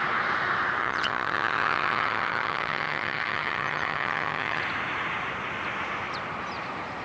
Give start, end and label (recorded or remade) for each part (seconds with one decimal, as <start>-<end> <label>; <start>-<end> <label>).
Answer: 0.0-0.8 recorded; 0.8-4.6 remade; 4.6-7.0 recorded